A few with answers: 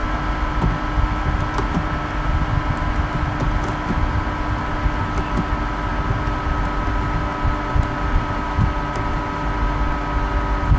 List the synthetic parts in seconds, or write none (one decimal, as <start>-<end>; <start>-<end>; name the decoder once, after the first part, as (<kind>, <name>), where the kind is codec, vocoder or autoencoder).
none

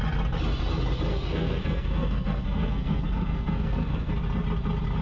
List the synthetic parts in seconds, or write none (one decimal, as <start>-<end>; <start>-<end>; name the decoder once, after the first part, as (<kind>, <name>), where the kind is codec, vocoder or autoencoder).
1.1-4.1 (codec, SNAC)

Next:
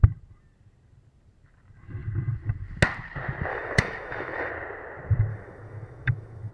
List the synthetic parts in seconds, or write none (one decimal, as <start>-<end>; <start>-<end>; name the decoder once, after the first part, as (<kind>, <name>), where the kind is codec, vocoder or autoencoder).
3.5-4.5 (autoencoder, DAC-VAE); 5.3-6.5

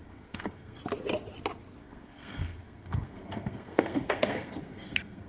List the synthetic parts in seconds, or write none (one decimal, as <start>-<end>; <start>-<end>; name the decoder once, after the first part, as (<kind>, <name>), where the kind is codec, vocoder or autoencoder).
0.0-0.8 (codec, SNAC); 1.8-5.3

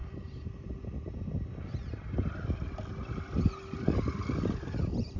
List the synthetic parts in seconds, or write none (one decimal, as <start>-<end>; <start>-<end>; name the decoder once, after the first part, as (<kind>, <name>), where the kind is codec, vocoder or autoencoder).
0.0-1.1 (vocoder, BigVGAN v2)

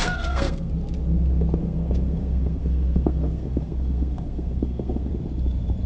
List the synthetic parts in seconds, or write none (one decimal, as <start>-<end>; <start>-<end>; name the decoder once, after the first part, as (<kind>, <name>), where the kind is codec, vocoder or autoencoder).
0.0-0.7 (codec, SNAC); 1.6-5.1

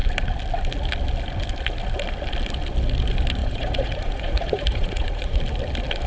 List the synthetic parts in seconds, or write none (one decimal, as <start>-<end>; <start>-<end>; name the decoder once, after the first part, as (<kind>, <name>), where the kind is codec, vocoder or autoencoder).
3.4-5.4 (vocoder, Vocos)